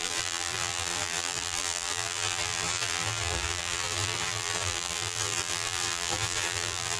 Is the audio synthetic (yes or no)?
yes